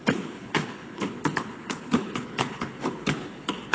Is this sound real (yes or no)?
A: no